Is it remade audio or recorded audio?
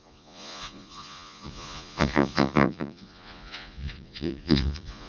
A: remade